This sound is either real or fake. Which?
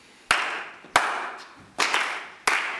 real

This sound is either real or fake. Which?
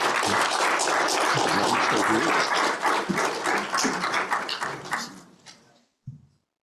real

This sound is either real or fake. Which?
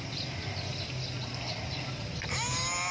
real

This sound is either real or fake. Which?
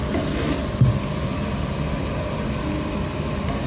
real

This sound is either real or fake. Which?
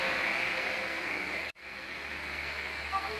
fake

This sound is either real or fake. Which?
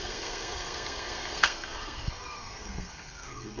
fake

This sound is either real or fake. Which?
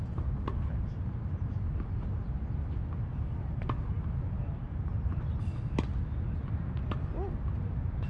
real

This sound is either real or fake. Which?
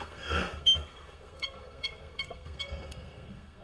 fake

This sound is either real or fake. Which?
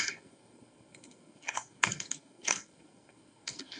fake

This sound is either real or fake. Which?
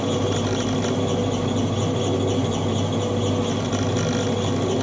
real